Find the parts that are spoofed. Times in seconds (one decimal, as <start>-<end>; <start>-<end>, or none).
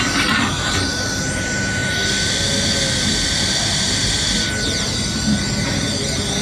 none